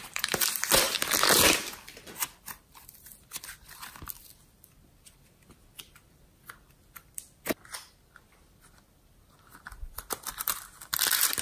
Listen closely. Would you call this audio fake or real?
fake